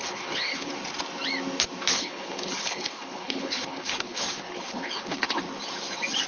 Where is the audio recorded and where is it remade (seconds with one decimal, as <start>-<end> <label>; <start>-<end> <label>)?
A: 0.0-0.7 remade; 0.7-1.9 recorded; 1.9-5.4 remade; 5.4-6.3 recorded